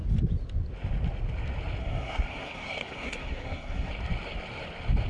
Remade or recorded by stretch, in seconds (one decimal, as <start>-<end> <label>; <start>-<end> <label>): 0.0-1.8 recorded; 1.8-3.9 remade; 3.9-5.1 recorded